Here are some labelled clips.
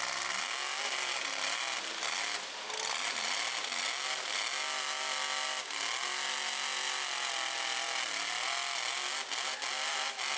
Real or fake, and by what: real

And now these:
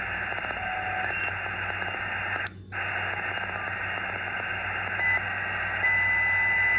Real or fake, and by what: real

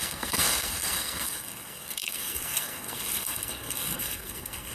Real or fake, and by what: fake, codec, SNAC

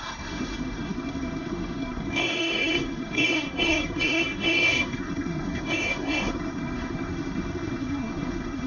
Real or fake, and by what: fake, codec, SNAC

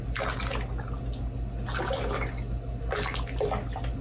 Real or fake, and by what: real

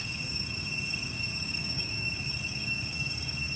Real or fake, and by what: fake, codec, DAC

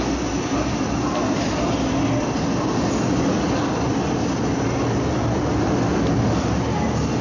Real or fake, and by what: real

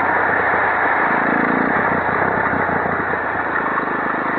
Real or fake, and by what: real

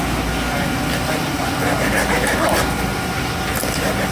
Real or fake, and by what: real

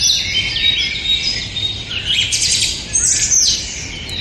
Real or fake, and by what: real